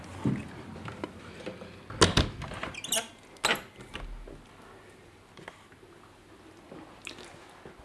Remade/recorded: recorded